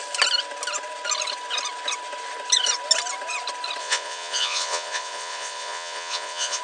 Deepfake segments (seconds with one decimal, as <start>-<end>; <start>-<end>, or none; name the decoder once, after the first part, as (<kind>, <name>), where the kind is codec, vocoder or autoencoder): 3.8-6.6 (vocoder, Vocos)